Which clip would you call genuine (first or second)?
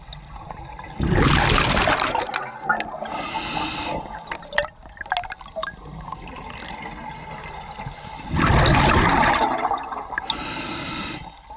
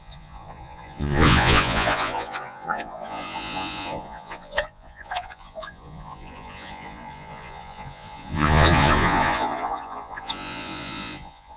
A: first